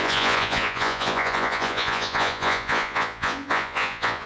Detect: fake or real fake